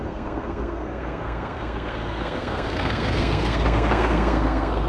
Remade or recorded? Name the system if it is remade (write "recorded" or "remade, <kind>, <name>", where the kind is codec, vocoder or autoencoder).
remade, codec, SNAC